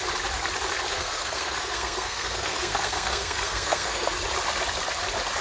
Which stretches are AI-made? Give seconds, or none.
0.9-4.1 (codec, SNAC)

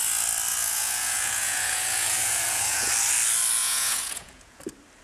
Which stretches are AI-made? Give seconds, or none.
0.5-2.9 (vocoder, Vocos); 3.6-4.6

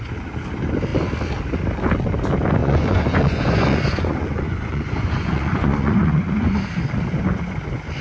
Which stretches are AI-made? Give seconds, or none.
2.6-6.5 (vocoder, Vocos)

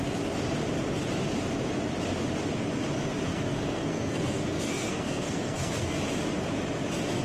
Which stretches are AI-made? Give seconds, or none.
3.3-6.0 (codec, SNAC)